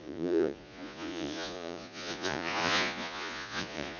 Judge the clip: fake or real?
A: fake